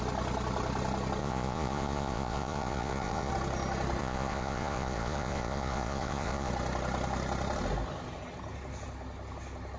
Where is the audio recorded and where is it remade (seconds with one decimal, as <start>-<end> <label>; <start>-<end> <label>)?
0.0-1.2 recorded; 1.2-3.3 remade; 3.3-4.0 recorded; 4.0-6.5 remade; 6.5-9.8 recorded